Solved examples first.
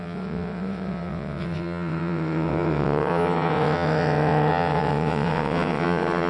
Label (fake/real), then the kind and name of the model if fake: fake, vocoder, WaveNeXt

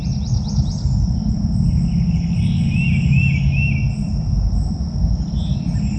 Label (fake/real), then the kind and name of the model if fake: real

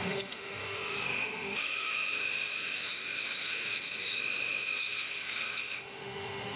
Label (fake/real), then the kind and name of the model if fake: fake, autoencoder, DAC-VAE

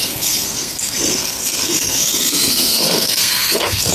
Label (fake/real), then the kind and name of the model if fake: fake, codec, SNAC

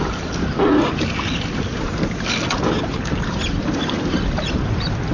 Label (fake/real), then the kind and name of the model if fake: real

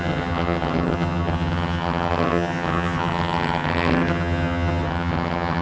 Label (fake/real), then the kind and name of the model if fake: fake, vocoder, HiFi-GAN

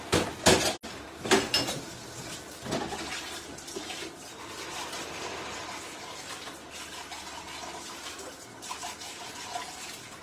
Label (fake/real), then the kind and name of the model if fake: real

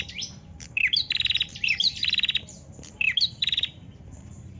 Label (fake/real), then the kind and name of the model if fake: fake, vocoder, BigVGAN v2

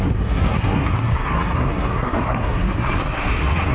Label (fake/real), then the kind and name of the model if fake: fake, codec, SNAC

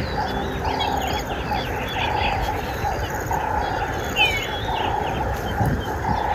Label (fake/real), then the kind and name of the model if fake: real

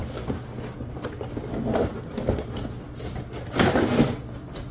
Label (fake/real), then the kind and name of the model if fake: real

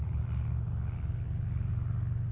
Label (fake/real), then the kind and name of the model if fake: real